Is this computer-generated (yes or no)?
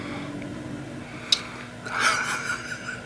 no